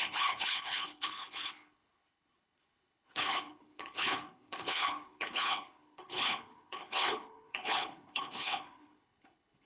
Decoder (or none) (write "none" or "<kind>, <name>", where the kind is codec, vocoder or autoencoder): codec, HILCodec